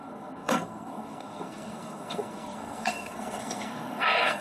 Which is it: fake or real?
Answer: fake